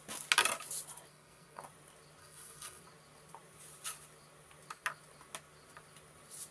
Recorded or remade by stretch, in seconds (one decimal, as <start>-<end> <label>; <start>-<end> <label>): 0.0-1.1 recorded; 1.1-1.6 remade; 1.6-2.2 recorded; 2.2-2.8 remade; 2.8-6.5 recorded